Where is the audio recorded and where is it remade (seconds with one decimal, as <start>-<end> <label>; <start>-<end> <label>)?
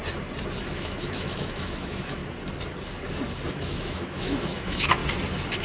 0.0-0.6 recorded; 0.6-2.2 remade; 2.2-3.5 recorded; 3.5-5.0 remade; 5.0-5.6 recorded